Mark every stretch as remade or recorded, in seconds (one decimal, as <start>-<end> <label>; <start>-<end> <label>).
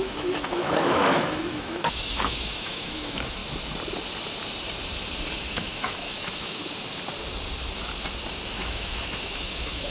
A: 0.0-3.4 remade; 3.4-5.4 recorded; 5.4-6.6 remade; 6.6-8.5 recorded; 8.5-9.9 remade